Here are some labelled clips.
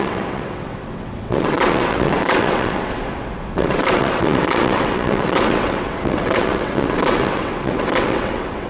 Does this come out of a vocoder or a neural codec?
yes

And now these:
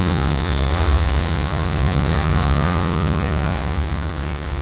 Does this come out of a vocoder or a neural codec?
yes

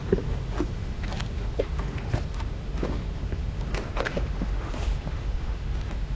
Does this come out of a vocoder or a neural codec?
yes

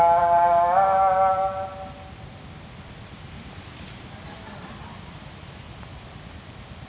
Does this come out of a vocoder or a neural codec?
no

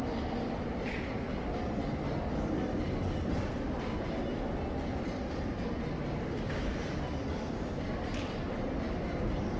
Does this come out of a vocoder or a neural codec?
no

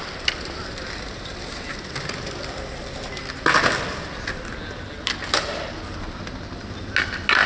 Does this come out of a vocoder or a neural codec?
no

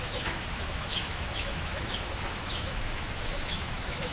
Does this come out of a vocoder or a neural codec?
yes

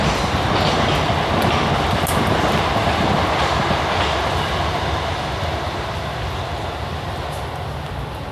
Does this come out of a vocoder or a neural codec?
no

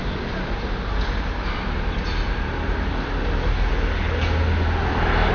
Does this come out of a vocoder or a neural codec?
no